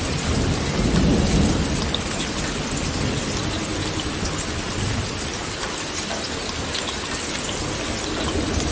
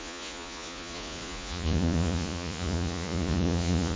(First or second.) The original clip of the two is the first